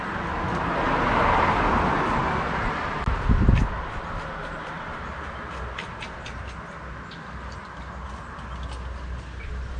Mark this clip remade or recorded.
recorded